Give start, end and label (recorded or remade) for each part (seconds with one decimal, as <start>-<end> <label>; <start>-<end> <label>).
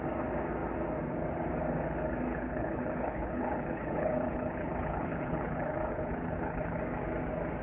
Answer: 0.0-2.3 recorded; 2.3-6.8 remade; 6.8-7.6 recorded